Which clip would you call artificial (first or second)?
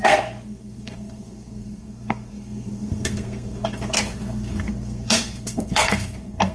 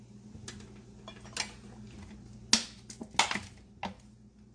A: first